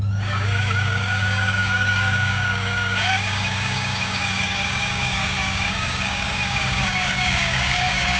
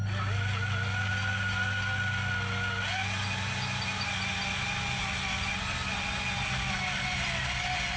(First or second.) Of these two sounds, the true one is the second